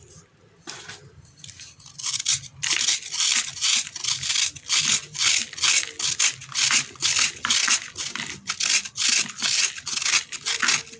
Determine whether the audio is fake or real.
real